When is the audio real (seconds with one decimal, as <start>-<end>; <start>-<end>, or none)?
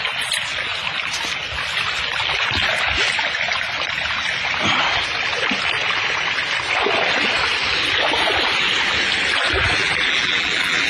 0.0-9.8